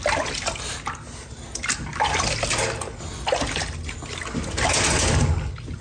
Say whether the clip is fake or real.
real